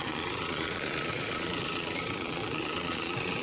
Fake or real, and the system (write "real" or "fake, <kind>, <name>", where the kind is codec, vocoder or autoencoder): fake, vocoder, Vocos